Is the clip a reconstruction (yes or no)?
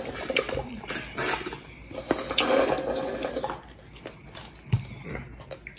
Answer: no